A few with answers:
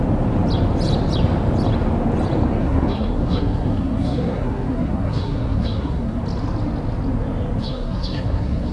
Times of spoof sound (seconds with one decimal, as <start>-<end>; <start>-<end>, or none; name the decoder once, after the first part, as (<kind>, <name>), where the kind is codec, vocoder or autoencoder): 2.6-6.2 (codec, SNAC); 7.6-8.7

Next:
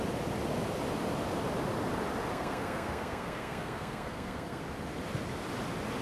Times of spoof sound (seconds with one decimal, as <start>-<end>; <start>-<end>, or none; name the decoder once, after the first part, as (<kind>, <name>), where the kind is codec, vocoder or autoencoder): 2.3-4.6 (codec, SNAC)

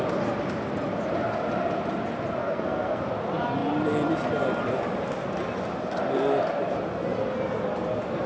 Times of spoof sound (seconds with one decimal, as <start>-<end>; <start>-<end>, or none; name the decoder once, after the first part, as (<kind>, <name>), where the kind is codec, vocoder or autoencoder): 2.4-3.0 (codec, SNAC)

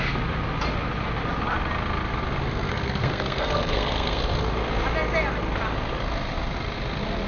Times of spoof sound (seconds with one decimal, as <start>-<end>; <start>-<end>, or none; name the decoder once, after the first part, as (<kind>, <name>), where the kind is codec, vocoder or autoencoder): 2.7-4.2 (codec, SNAC)

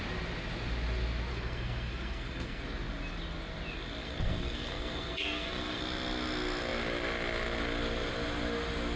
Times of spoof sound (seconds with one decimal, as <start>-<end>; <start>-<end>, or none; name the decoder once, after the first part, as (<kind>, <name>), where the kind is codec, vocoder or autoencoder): 1.3-2.6 (codec, SNAC); 4.0-5.8

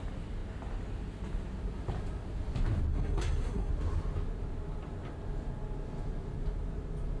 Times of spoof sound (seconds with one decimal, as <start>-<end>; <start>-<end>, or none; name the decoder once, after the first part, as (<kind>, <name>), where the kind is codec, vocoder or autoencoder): 2.9-3.7 (codec, SNAC)

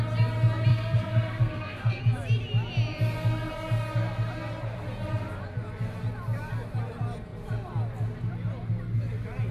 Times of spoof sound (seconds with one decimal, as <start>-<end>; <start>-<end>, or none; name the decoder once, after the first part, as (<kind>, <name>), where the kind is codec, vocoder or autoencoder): 0.7-2.0 (codec, SNAC)